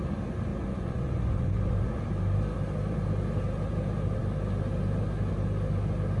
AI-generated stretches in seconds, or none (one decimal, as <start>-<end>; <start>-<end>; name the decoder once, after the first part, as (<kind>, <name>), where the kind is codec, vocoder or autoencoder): 0.5-2.0 (vocoder, Vocos)